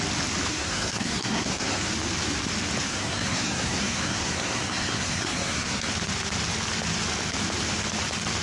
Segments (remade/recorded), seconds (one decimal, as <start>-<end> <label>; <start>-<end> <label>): 0.0-0.5 recorded; 0.5-1.9 remade; 1.9-2.9 recorded; 2.9-5.9 remade; 5.9-8.4 recorded